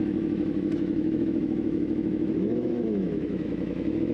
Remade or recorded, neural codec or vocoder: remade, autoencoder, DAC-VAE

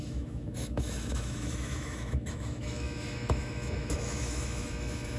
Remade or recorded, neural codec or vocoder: remade, autoencoder, DAC-VAE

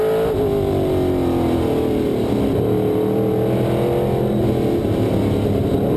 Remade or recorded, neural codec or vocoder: recorded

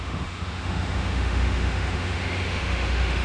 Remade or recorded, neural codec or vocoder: remade, autoencoder, DAC-VAE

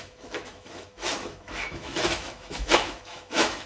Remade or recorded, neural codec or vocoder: remade, autoencoder, DAC-VAE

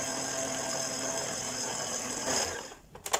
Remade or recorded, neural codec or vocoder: recorded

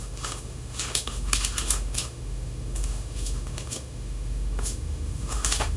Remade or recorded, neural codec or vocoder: remade, autoencoder, DAC-VAE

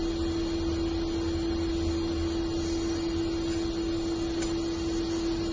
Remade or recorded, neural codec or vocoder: recorded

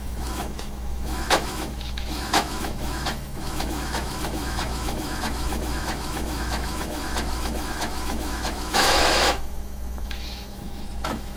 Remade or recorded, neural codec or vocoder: remade, autoencoder, DAC-VAE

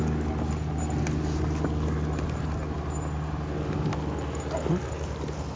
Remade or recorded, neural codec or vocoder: recorded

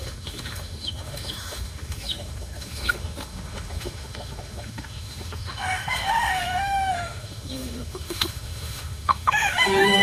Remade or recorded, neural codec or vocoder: remade, autoencoder, DAC-VAE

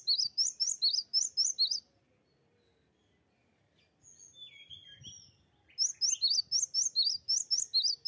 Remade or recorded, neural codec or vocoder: recorded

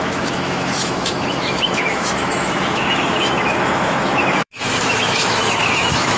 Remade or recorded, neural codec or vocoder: remade, autoencoder, DAC-VAE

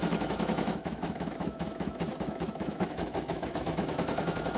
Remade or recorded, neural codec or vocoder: remade, autoencoder, DAC-VAE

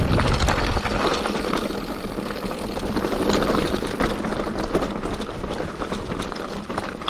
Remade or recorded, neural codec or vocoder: recorded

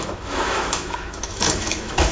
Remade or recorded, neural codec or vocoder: remade, autoencoder, DAC-VAE